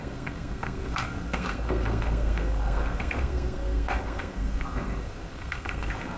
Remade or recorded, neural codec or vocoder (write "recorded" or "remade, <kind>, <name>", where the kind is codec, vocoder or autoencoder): remade, codec, SNAC